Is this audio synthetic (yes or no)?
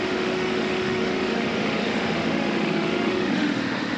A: yes